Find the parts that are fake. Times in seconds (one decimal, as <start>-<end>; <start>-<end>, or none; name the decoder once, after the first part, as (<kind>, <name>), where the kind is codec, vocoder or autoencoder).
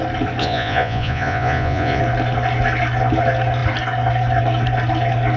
0.4-2.0 (vocoder, Vocos)